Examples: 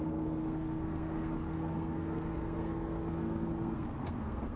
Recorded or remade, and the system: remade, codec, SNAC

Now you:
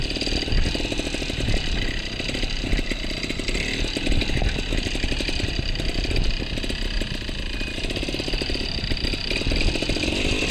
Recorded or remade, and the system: recorded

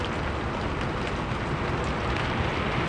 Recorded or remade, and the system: recorded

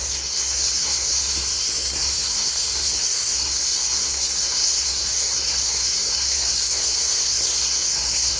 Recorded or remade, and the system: remade, codec, SNAC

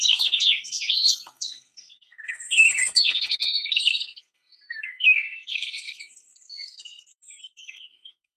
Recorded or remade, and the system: remade, codec, SNAC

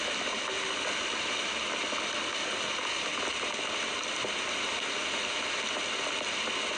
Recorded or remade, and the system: recorded